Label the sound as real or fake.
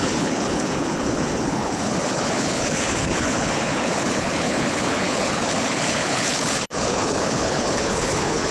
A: fake